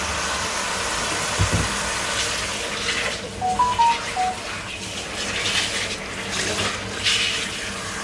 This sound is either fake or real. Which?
real